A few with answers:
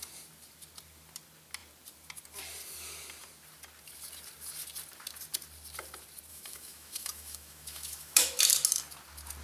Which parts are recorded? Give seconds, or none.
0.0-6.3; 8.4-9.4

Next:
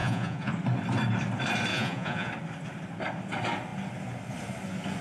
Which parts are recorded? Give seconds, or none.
0.5-1.7; 2.3-5.0

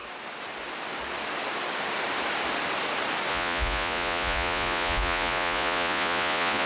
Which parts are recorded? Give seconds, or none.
0.0-3.3

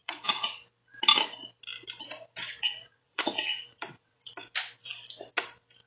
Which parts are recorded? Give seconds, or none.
0.6-2.4; 4.3-5.9

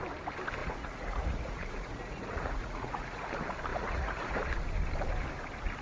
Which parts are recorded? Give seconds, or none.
0.0-0.6; 3.3-3.7; 4.5-5.8

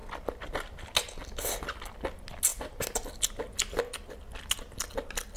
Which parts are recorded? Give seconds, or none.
0.0-5.4